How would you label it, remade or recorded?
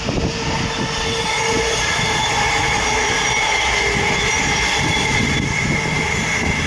recorded